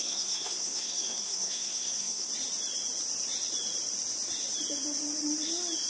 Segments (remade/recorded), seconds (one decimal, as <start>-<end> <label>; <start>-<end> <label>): 0.0-2.3 remade; 2.3-5.9 recorded